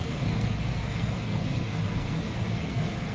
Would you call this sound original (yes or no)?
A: no